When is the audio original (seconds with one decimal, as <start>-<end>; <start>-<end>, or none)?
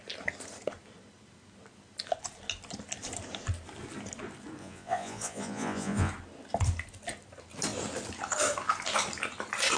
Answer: 0.0-4.6; 6.1-9.8